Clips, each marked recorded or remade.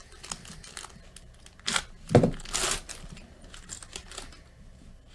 recorded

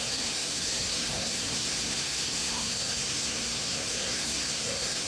remade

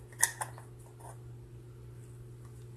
recorded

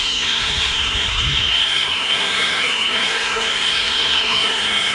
remade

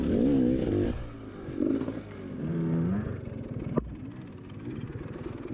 recorded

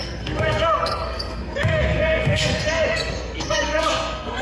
remade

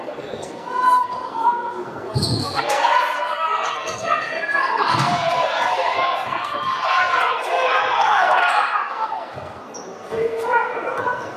remade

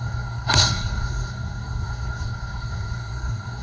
remade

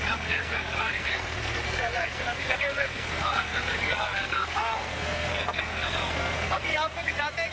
remade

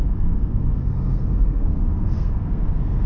remade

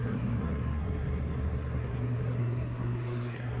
remade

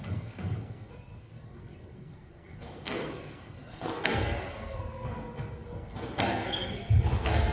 remade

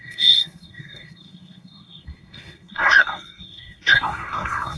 remade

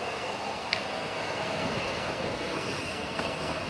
remade